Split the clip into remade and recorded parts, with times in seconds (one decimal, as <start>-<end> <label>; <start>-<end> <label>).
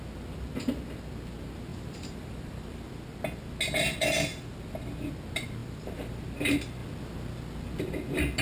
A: 0.0-1.7 recorded; 1.7-2.9 remade; 2.9-4.3 recorded; 4.3-5.1 remade; 5.1-5.6 recorded; 5.6-6.2 remade; 6.2-8.4 recorded